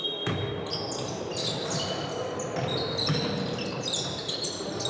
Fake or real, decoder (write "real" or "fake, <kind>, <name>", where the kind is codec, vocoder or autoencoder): real